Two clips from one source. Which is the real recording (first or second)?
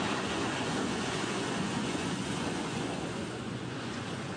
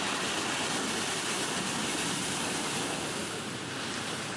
second